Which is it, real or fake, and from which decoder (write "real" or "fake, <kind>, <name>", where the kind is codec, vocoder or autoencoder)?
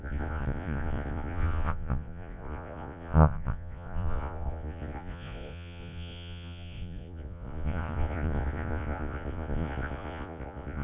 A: fake, vocoder, Vocos